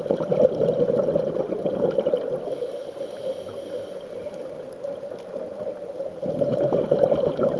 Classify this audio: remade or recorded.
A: recorded